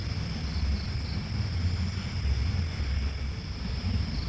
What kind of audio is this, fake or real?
real